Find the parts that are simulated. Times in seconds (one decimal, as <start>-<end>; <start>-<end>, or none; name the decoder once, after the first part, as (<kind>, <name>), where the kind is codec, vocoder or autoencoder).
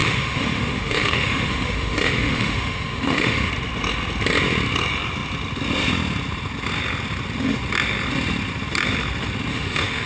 0.0-3.5 (autoencoder, DAC-VAE); 9.5-10.1